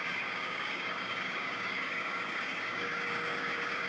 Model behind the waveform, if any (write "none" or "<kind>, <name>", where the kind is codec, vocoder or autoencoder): codec, DAC